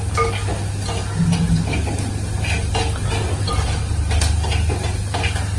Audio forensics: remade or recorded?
recorded